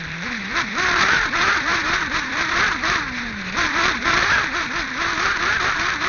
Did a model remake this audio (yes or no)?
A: yes